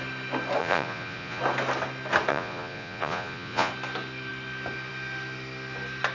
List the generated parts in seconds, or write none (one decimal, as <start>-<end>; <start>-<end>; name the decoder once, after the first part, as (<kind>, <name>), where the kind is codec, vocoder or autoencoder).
0.6-1.4 (vocoder, Vocos); 2.3-3.7